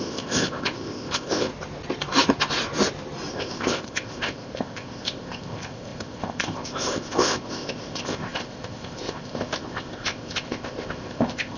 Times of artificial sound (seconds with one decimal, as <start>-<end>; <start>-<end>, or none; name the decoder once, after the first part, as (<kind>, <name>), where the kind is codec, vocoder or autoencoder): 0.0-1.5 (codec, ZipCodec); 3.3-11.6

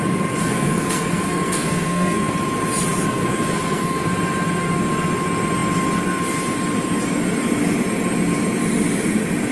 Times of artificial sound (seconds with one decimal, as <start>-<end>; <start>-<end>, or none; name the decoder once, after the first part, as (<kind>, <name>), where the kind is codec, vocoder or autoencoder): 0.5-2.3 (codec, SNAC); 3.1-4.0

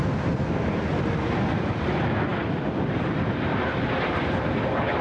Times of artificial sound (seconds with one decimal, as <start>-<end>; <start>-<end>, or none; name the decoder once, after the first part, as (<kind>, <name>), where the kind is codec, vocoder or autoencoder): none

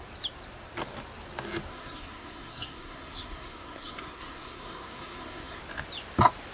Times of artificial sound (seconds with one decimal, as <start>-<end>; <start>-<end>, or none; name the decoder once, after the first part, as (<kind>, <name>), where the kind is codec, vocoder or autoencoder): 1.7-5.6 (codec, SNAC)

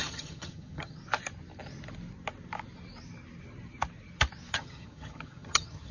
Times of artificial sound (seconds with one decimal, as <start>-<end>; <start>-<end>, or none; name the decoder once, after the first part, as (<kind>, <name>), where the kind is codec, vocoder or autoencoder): 0.0-1.0 (vocoder, HiFi-GAN); 4.5-5.9

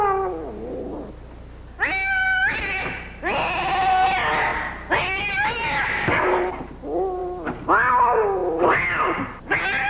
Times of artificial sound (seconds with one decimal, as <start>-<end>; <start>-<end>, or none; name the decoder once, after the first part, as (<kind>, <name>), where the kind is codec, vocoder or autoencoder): none

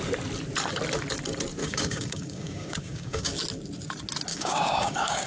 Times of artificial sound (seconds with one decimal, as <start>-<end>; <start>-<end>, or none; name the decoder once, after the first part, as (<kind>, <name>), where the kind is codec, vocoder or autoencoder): 1.6-3.4 (codec, DAC); 4.3-5.3